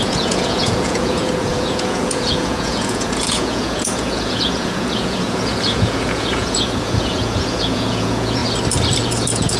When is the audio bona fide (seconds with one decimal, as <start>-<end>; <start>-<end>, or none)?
8.4-9.0